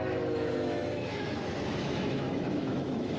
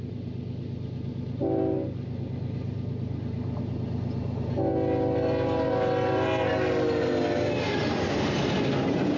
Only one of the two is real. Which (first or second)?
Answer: second